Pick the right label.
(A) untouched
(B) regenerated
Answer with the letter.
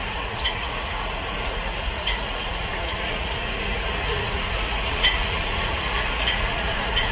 B